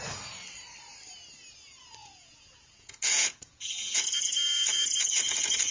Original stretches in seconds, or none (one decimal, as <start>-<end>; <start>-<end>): 0.0-2.0